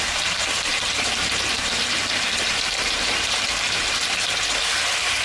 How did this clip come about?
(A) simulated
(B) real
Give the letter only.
A